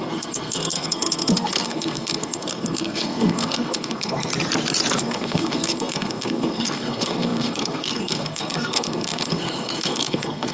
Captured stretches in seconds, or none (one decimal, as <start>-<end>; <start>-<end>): 4.3-5.0

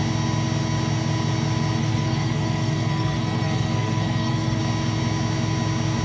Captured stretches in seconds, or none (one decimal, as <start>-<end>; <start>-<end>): 0.0-1.8; 4.6-6.0

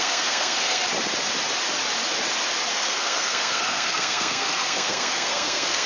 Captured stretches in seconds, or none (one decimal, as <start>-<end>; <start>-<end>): 0.8-2.7

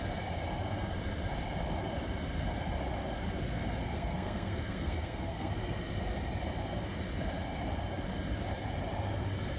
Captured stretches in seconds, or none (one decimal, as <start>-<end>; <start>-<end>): 0.0-3.8; 5.5-9.6